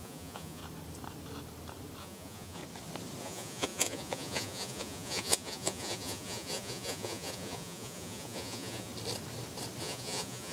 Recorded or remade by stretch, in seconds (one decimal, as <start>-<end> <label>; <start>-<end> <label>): 0.0-0.6 remade; 0.6-2.0 recorded; 2.0-2.6 remade; 2.6-3.2 recorded; 3.2-8.9 remade; 8.9-9.8 recorded; 9.8-10.5 remade